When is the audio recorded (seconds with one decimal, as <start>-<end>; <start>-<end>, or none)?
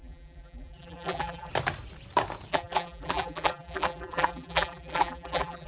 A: 1.5-2.5